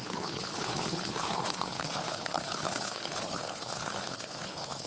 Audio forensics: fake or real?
fake